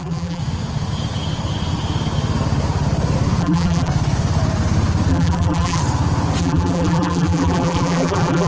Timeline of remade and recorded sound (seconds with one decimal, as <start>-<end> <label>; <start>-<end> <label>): 0.0-0.4 remade; 0.4-3.4 recorded; 3.4-3.9 remade; 3.9-5.1 recorded; 5.1-5.8 remade; 5.8-6.4 recorded; 6.4-8.5 remade